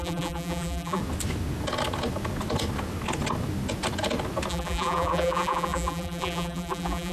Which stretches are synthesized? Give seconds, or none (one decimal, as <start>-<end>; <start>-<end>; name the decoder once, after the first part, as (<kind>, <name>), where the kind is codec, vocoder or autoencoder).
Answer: 0.0-1.0 (vocoder, BigVGAN v2); 4.5-7.1